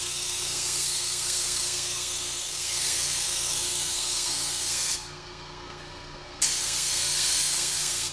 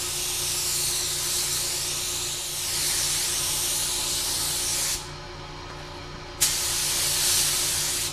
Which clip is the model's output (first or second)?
first